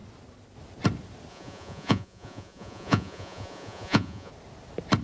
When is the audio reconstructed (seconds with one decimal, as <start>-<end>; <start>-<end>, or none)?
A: 1.3-4.3